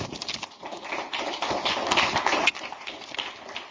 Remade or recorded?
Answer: recorded